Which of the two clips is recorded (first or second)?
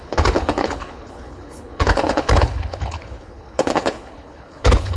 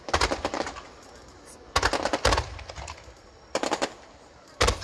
second